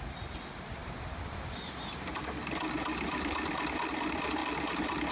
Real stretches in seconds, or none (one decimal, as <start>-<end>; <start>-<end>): 4.4-5.1